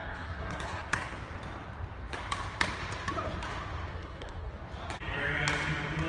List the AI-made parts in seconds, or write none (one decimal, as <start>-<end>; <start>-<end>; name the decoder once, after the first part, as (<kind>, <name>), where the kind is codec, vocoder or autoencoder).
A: 0.0-1.2 (codec, SNAC); 3.9-4.5